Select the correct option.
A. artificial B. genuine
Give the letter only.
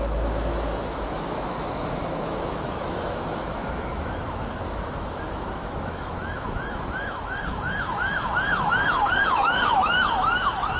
A